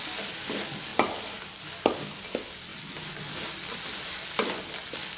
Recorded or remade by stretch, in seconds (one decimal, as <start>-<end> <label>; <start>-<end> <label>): 0.0-5.2 recorded

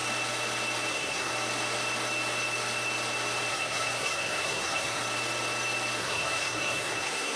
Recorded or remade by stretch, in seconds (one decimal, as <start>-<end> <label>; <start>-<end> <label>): 0.0-0.9 recorded; 0.9-1.3 remade; 1.3-3.5 recorded; 3.5-5.0 remade; 5.0-6.0 recorded; 6.0-7.4 remade